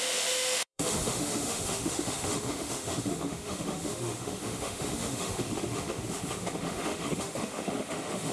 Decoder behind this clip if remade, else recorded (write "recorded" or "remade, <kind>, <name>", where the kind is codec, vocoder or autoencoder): remade, autoencoder, DAC-VAE